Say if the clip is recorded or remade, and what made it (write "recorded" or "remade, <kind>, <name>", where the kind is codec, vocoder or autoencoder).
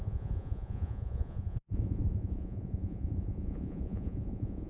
remade, vocoder, Vocos